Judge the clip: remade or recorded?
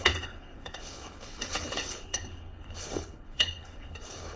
remade